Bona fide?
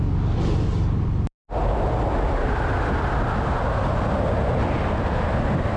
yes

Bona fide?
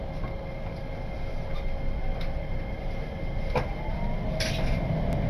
yes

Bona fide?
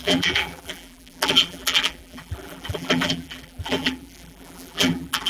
no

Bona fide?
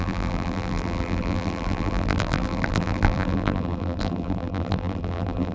no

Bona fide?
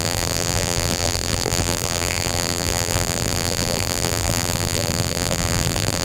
no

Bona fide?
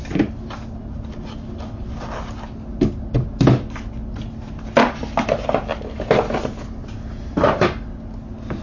yes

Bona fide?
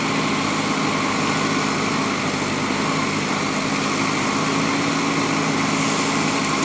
yes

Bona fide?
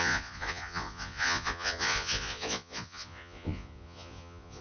no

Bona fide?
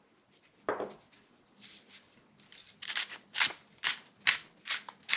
yes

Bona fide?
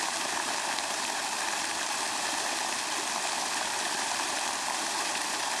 no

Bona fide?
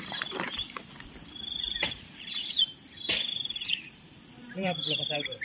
no